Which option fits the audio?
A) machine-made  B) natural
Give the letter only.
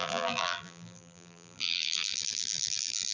A